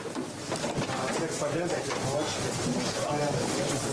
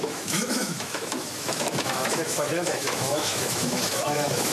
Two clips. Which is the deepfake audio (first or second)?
second